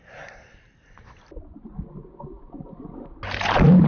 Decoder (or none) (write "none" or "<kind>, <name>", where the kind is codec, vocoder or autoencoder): none